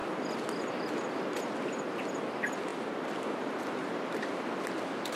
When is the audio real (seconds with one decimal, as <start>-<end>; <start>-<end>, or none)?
0.0-5.2